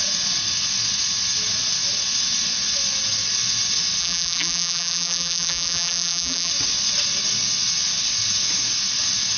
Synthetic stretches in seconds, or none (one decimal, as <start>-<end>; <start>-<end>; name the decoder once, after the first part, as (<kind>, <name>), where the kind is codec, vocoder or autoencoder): 4.0-6.5 (vocoder, BigVGAN v2)